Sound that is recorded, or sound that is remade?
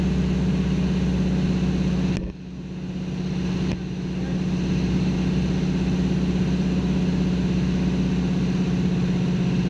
recorded